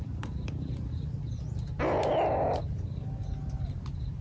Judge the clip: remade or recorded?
recorded